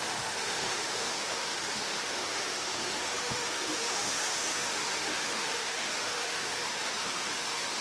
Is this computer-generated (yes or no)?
yes